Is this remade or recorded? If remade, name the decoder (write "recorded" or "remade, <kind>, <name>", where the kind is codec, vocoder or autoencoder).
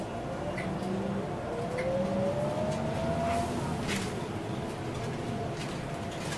recorded